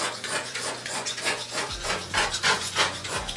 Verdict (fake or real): fake